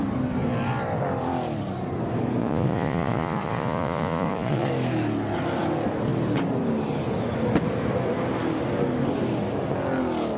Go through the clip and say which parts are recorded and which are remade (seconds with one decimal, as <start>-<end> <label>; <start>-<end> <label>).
0.0-2.4 recorded; 2.4-4.7 remade; 4.7-10.4 recorded